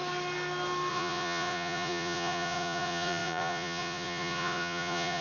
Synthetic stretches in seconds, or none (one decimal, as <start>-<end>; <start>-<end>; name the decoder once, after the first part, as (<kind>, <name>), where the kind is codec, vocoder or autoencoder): 0.9-5.2 (vocoder, Vocos)